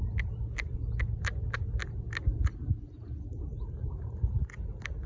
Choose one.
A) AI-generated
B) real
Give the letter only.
B